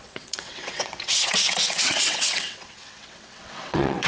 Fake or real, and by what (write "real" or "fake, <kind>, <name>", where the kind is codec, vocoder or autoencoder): fake, vocoder, WaveNeXt